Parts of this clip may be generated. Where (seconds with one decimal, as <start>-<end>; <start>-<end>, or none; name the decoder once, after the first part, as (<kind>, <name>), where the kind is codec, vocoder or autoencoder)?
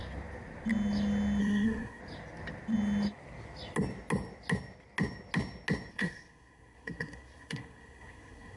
1.4-2.0 (codec, SNAC); 5.9-8.6